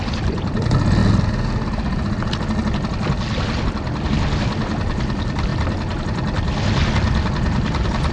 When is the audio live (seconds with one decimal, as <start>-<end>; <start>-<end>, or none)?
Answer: 0.0-8.1